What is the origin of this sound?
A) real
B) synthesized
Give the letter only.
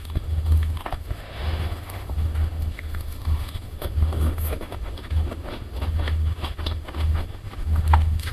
B